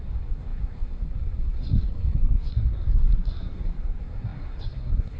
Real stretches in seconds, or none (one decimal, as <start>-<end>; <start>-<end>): none